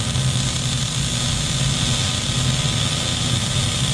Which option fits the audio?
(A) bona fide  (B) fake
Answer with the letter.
A